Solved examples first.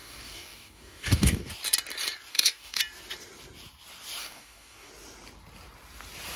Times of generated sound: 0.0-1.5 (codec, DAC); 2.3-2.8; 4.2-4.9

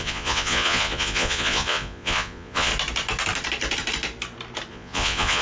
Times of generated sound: 0.0-2.7 (vocoder, Vocos); 4.7-5.4

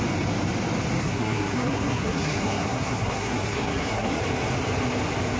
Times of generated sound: 1.0-4.2 (codec, SNAC)

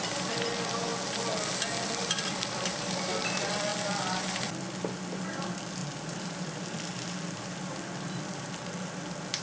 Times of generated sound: 0.0-0.9 (vocoder, BigVGAN v2); 2.0-3.7; 4.2-9.4

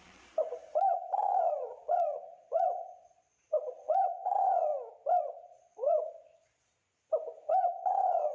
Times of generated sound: 0.0-4.7 (vocoder, Vocos); 5.2-6.8; 7.5-8.3

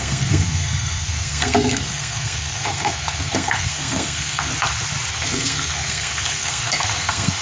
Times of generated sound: 0.0-4.5 (codec, SNAC); 5.1-7.4

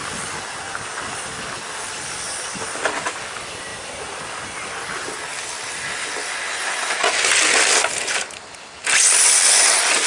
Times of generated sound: none